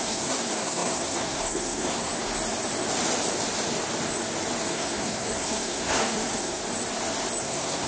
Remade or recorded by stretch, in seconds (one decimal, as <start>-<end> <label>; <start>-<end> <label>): 0.0-2.1 remade; 2.1-4.7 recorded; 4.7-6.6 remade; 6.6-7.4 recorded; 7.4-7.9 remade